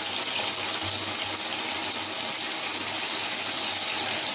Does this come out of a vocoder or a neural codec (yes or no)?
no